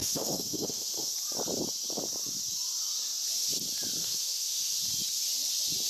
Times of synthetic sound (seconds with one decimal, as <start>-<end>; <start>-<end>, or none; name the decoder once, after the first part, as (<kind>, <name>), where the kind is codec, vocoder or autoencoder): 0.0-1.1 (autoencoder, DAC-VAE); 4.0-4.8